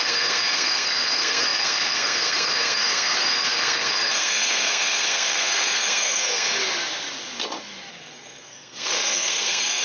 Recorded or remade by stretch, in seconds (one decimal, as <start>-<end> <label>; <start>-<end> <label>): 0.0-6.6 remade; 6.6-7.9 recorded; 7.9-9.8 remade